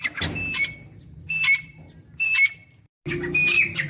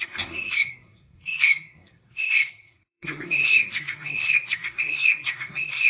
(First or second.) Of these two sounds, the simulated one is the second